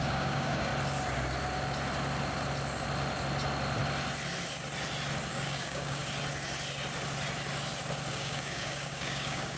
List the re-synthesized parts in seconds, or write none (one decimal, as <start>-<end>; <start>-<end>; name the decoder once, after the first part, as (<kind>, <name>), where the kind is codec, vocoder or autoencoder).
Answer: 0.0-0.7 (codec, DAC); 5.3-6.0; 8.1-9.6